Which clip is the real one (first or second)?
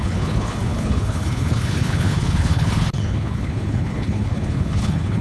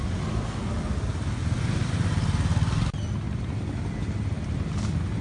second